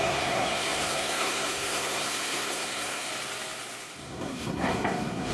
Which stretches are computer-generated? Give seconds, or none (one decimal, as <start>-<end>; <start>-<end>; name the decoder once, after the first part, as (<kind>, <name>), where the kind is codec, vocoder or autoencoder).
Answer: 0.0-3.1 (codec, SNAC); 4.0-5.3